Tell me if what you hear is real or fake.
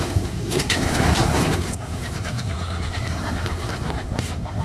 fake